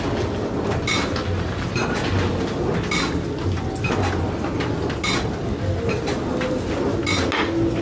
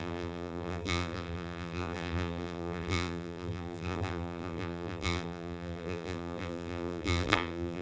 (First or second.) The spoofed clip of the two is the second